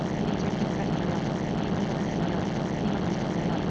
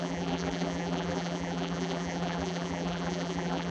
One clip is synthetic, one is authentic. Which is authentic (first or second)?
first